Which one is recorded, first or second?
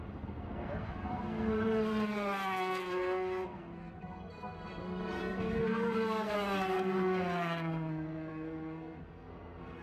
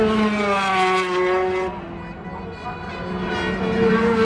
second